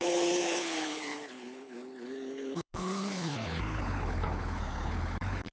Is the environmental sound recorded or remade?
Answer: remade